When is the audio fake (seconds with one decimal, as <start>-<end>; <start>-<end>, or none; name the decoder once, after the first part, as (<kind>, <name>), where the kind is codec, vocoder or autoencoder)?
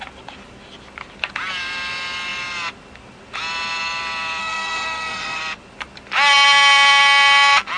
4.4-5.4 (codec, SNAC)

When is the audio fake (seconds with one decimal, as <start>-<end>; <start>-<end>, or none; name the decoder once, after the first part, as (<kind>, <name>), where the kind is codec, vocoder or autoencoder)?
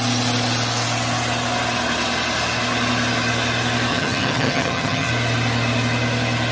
3.9-5.1 (vocoder, HiFi-GAN)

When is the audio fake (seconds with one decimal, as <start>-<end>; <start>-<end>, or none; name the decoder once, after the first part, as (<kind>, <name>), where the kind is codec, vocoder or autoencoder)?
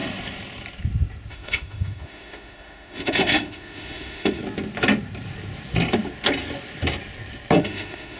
1.3-4.4 (autoencoder, DAC-VAE); 7.6-8.2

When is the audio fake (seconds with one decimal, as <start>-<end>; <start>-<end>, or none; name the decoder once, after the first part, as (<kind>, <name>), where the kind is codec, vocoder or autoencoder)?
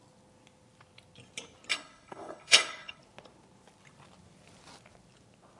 1.7-3.0 (codec, HILCodec)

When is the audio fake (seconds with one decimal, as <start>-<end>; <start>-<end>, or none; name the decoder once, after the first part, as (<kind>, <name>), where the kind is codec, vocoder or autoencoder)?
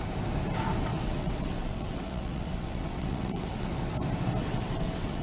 0.9-3.7 (vocoder, WaveNeXt); 4.4-5.2